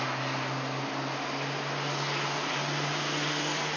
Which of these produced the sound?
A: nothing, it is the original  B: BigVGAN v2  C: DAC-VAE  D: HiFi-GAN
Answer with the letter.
A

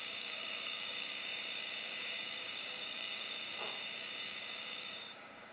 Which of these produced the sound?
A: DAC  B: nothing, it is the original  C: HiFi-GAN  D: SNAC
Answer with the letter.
A